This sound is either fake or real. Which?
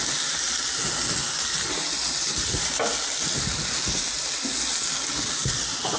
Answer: real